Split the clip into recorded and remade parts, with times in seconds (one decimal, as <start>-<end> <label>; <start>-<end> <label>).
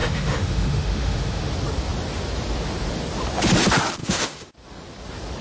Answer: 0.0-1.5 remade; 1.5-4.0 recorded; 4.0-4.5 remade; 4.5-5.4 recorded